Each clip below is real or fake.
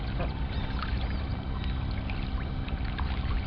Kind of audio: real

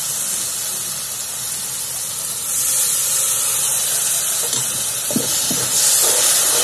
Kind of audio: real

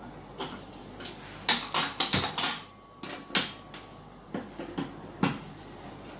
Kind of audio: real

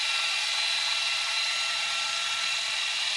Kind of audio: real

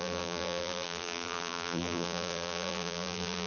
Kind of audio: fake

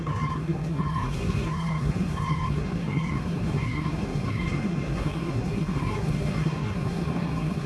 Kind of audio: fake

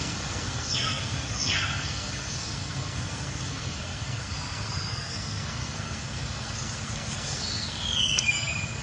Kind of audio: fake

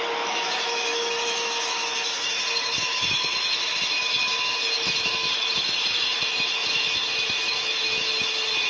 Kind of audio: fake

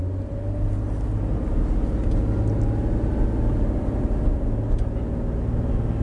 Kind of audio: real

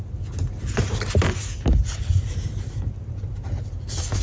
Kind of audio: real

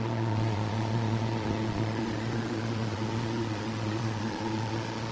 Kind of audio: fake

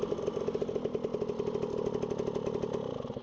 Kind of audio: real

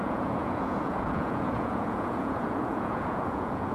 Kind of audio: fake